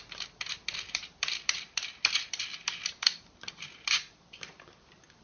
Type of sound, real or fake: fake